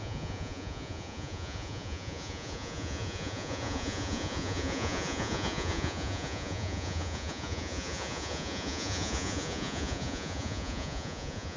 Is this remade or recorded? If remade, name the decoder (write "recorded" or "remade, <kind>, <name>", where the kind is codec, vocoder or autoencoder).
remade, vocoder, Vocos